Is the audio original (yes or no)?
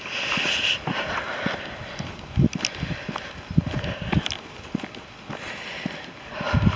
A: yes